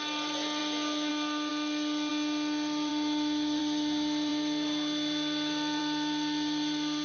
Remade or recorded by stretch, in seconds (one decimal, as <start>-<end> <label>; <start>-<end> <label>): 0.0-7.0 recorded